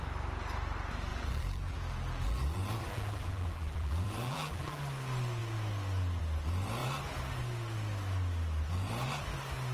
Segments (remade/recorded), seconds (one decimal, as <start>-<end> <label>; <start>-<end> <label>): 0.0-1.1 recorded; 1.1-4.8 remade; 4.8-9.7 recorded